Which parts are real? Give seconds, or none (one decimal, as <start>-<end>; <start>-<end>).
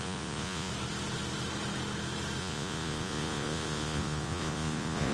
0.7-2.4